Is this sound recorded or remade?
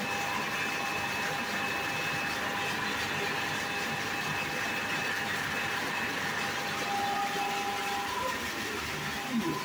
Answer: recorded